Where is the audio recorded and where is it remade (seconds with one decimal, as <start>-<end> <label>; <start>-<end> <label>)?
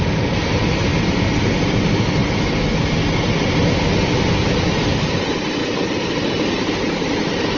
0.0-0.9 remade; 0.9-1.4 recorded; 1.4-2.2 remade; 2.2-4.9 recorded; 4.9-7.6 remade